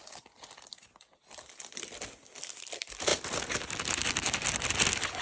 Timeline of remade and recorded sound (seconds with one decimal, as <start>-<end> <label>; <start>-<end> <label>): 0.0-5.2 recorded